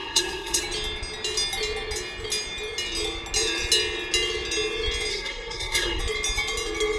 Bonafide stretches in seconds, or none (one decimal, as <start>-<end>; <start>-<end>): 0.6-5.1; 6.0-7.0